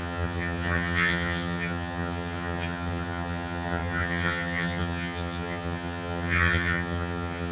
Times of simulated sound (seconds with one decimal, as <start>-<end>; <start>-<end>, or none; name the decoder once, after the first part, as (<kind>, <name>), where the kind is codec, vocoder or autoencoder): 0.0-7.5 (vocoder, HiFi-GAN)